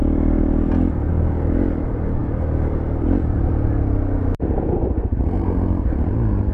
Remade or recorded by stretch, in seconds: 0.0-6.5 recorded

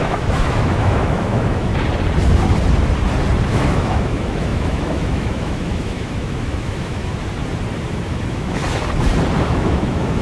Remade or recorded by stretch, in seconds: 0.0-1.7 remade; 1.7-3.5 recorded; 3.5-7.0 remade; 7.0-7.9 recorded; 7.9-8.6 remade; 8.6-9.4 recorded; 9.4-10.2 remade